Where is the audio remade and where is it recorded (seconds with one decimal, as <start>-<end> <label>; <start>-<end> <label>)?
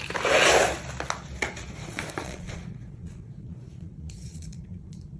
0.0-1.8 recorded; 1.8-5.2 remade